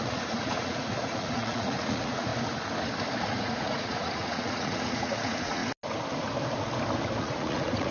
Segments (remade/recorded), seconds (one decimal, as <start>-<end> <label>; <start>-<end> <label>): 0.0-2.3 remade; 2.3-3.3 recorded; 3.3-5.6 remade; 5.6-7.2 recorded; 7.2-7.9 remade